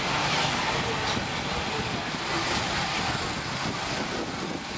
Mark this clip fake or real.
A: real